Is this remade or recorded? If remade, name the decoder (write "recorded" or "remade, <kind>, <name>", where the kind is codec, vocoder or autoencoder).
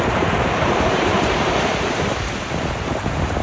remade, vocoder, BigVGAN v2